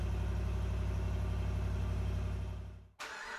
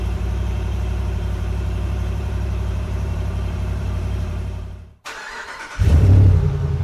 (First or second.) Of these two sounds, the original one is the first